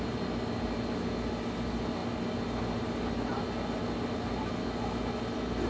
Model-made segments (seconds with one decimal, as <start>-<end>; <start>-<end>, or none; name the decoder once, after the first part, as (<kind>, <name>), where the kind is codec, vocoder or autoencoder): none